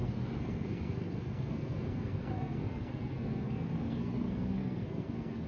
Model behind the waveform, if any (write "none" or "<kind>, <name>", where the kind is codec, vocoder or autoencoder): codec, SNAC